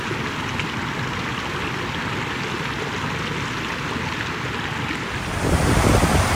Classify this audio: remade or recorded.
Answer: recorded